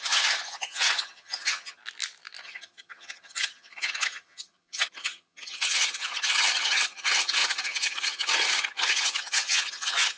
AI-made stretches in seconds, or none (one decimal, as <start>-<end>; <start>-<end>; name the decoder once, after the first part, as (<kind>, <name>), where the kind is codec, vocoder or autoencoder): 0.0-1.8 (vocoder, HiFi-GAN); 2.4-10.2

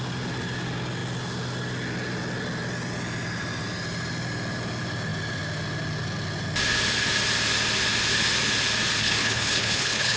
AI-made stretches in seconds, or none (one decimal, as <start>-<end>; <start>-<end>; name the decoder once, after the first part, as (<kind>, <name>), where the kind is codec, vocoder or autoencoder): 9.0-10.2 (codec, HILCodec)

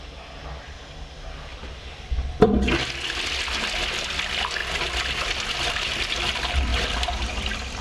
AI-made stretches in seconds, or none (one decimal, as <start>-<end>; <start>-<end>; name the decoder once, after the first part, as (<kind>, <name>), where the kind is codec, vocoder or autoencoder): 1.5-2.6 (vocoder, BigVGAN v2); 6.7-7.3

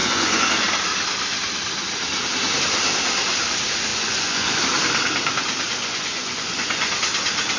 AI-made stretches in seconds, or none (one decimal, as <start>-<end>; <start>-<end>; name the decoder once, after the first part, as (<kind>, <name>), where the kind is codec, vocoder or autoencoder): 0.0-0.5 (vocoder, Vocos); 3.9-4.6; 5.8-6.9

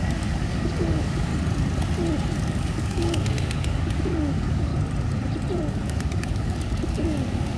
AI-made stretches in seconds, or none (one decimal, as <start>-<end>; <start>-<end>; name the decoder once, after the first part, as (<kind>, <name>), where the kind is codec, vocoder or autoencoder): 0.0-1.3 (codec, DAC); 2.4-4.7; 5.7-7.6

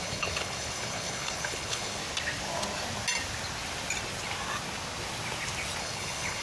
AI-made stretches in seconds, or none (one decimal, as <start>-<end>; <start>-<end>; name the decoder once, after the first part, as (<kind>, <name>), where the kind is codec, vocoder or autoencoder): 0.0-2.0 (codec, HILCodec); 5.8-6.4

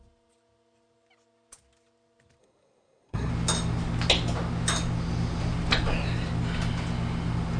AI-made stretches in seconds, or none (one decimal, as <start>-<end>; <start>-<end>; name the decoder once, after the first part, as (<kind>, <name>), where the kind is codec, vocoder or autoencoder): 2.4-3.3 (codec, SNAC)